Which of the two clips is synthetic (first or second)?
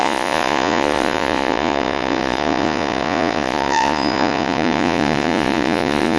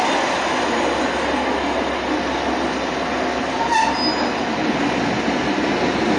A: first